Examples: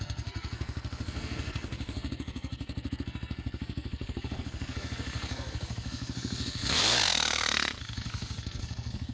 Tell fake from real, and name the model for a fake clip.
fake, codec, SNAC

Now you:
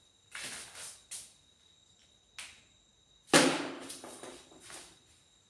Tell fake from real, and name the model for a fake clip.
real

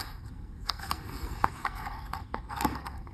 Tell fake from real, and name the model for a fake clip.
fake, codec, SNAC